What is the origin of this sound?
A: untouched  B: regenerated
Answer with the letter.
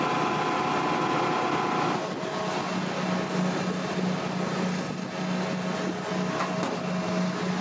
A